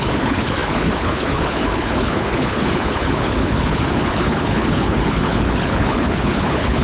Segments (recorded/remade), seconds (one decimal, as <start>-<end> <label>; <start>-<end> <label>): 0.0-6.8 remade